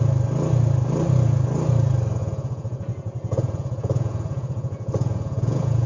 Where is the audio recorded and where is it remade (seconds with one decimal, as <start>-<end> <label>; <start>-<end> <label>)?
0.0-2.2 recorded; 2.2-5.9 remade